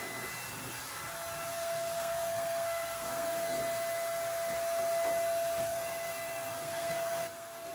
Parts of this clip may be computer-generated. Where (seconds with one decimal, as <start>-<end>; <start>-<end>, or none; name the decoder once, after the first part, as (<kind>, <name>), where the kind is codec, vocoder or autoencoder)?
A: 1.5-3.6 (codec, SNAC); 5.6-7.7